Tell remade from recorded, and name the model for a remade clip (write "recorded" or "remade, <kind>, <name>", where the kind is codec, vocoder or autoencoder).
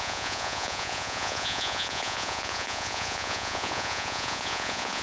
remade, vocoder, Vocos